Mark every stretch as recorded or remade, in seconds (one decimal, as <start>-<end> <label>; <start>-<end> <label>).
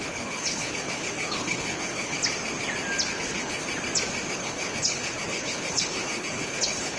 0.0-2.2 remade; 2.2-3.1 recorded; 3.1-3.6 remade; 3.6-4.3 recorded; 4.3-7.0 remade